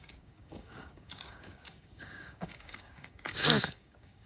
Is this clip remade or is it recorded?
remade